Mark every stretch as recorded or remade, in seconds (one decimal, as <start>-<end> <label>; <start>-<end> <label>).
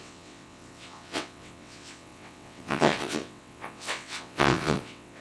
0.0-5.2 remade